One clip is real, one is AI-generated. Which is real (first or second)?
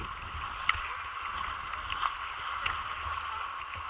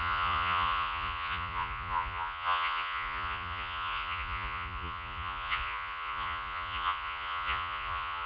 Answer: first